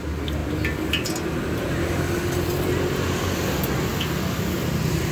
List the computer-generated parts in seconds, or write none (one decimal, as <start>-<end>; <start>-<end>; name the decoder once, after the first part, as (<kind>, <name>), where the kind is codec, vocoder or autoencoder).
none